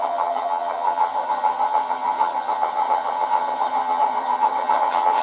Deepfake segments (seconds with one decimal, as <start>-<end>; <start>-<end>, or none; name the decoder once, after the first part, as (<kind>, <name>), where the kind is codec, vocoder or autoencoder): 0.0-5.2 (vocoder, HiFi-GAN)